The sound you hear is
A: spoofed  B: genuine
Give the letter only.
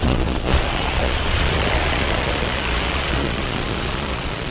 A